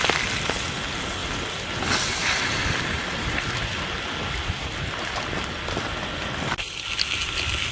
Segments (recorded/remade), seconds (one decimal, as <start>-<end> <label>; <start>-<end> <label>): 0.0-1.2 recorded; 1.2-4.5 remade; 4.5-7.7 recorded